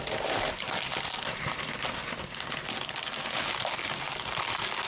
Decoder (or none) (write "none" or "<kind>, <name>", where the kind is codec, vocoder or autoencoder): none